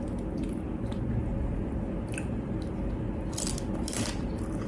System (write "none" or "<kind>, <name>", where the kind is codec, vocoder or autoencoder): none